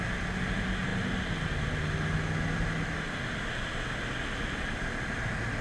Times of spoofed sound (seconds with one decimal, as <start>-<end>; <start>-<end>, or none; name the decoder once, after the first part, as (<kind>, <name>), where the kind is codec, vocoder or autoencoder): none